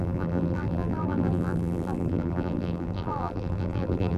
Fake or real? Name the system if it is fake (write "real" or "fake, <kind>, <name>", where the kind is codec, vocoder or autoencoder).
fake, vocoder, BigVGAN v2